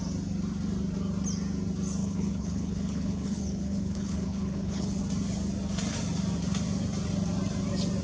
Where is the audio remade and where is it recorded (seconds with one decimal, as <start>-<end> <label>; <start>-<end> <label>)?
0.0-2.0 recorded; 2.0-5.0 remade; 5.0-8.0 recorded